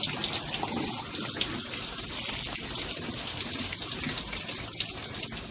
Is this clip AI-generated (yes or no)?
no